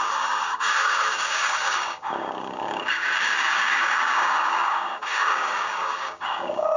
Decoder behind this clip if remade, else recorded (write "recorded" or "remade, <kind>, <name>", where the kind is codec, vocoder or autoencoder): remade, codec, DAC